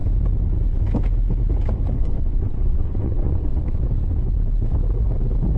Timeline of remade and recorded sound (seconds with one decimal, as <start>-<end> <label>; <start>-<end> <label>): 0.0-2.0 recorded; 2.0-3.6 remade; 3.6-5.6 recorded